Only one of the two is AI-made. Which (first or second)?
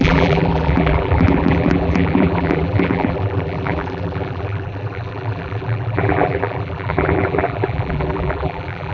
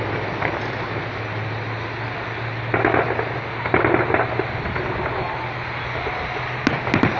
first